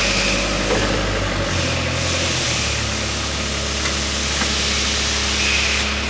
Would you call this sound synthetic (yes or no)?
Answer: no